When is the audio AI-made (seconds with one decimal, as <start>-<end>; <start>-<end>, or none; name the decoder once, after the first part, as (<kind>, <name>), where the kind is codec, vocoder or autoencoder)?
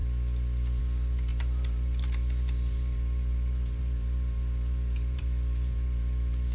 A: 0.8-6.5 (vocoder, BigVGAN v2)